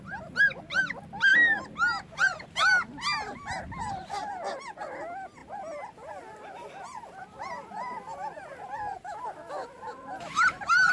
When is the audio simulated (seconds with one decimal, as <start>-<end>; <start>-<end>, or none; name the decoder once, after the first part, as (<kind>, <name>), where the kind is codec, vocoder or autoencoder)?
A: none